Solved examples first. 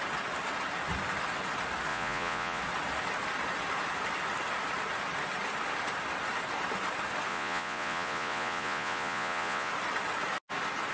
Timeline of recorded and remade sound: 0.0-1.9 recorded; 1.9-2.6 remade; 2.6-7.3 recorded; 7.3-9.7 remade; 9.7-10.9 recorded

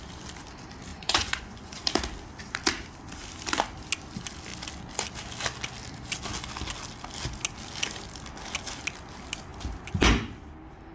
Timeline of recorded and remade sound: 0.0-0.9 recorded; 0.9-1.8 remade; 1.8-10.9 recorded

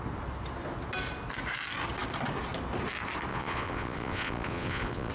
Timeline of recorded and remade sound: 0.0-3.3 recorded; 3.3-5.1 remade

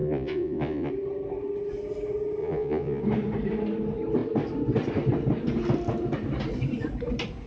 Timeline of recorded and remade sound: 0.0-0.9 remade; 0.9-2.4 recorded; 2.4-3.0 remade; 3.0-7.5 recorded

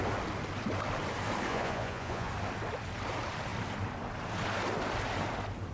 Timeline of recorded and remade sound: 0.0-1.5 recorded; 1.5-2.3 remade; 2.3-5.7 recorded

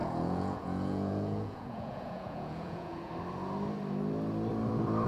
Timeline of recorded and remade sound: 0.0-3.1 remade; 3.1-5.1 recorded

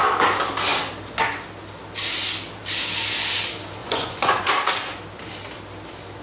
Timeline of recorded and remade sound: 0.0-3.8 recorded; 3.8-4.5 remade; 4.5-6.2 recorded